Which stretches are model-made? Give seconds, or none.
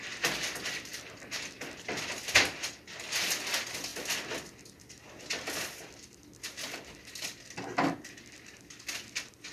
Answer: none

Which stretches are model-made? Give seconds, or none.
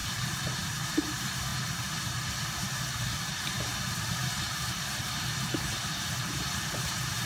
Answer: 0.6-1.5 (vocoder, BigVGAN v2); 2.9-7.3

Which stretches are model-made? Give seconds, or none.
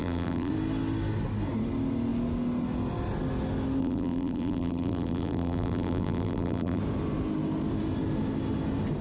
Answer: 0.0-0.5 (vocoder, BigVGAN v2); 3.8-6.8